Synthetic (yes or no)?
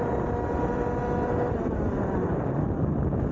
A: no